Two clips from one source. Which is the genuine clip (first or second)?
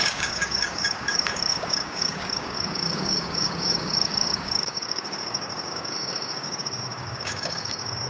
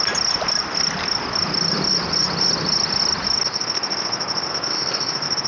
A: second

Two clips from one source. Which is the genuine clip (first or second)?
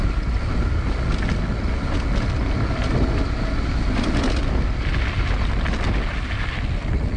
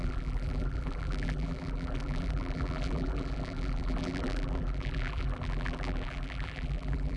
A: first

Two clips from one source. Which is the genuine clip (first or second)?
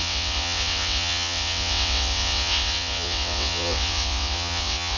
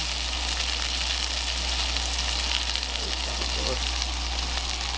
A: second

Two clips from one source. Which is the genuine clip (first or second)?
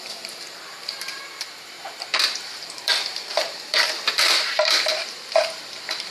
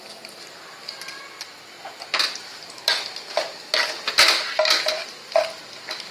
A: second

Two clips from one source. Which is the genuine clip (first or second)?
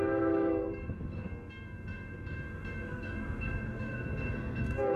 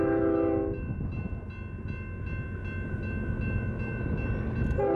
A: second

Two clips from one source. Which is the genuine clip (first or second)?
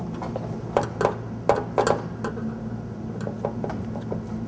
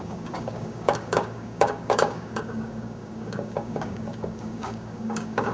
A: first